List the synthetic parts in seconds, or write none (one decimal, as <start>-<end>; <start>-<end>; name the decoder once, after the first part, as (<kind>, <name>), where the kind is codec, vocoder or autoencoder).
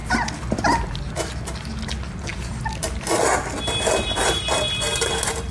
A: none